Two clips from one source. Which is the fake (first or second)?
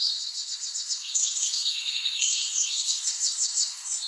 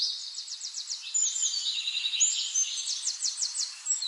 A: first